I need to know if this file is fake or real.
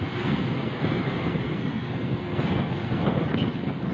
fake